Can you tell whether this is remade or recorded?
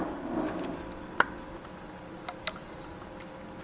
recorded